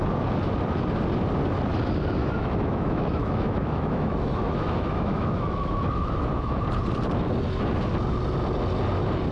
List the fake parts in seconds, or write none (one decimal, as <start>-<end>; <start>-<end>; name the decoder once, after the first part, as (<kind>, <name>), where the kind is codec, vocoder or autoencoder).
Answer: 2.2-6.6 (autoencoder, DAC-VAE)